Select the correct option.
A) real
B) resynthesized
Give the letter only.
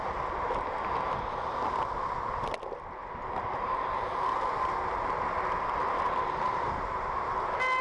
A